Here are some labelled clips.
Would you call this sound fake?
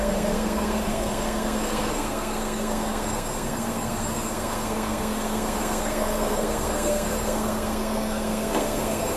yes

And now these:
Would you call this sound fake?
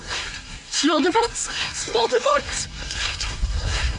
yes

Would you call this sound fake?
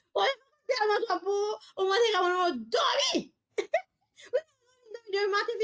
no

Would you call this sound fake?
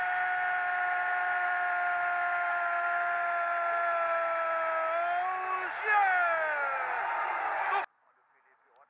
no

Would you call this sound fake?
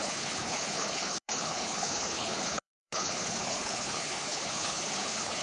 yes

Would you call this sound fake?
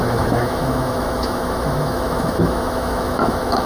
yes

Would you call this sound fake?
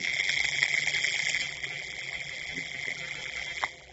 yes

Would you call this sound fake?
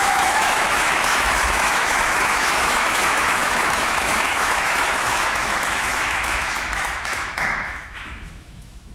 yes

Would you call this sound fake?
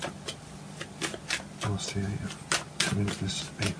no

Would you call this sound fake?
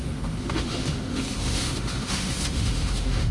yes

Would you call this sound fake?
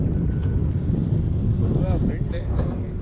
no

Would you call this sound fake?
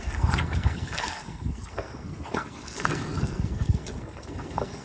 yes